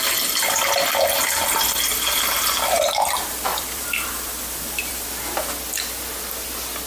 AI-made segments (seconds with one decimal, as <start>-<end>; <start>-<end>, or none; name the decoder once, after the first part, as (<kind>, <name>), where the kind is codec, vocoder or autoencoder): 3.5-4.9 (vocoder, BigVGAN v2)